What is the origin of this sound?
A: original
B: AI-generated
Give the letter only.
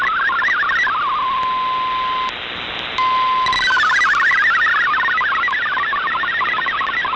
A